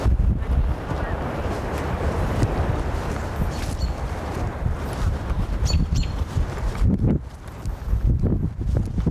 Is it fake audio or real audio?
fake